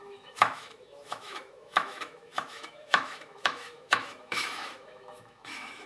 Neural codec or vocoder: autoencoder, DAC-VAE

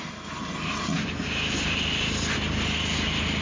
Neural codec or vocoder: none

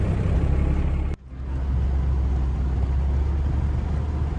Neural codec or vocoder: none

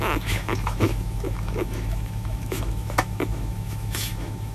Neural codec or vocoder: autoencoder, DAC-VAE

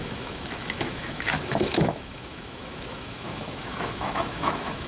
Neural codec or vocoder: autoencoder, DAC-VAE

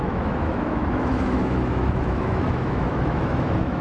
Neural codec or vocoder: autoencoder, DAC-VAE